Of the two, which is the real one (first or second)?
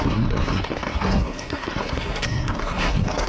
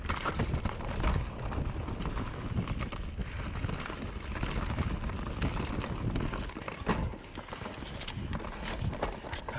second